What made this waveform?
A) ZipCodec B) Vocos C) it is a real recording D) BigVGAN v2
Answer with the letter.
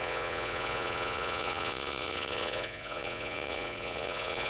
B